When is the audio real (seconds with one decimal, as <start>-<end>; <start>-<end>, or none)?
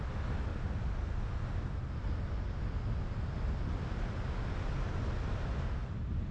0.5-1.6; 2.0-5.3